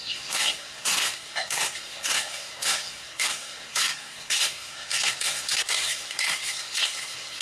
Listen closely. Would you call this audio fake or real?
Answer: fake